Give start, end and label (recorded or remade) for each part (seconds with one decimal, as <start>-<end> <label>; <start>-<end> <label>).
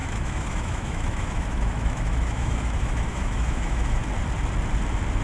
0.0-4.0 remade; 4.0-5.2 recorded